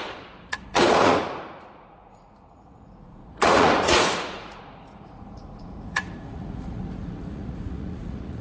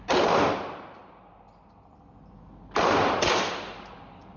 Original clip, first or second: second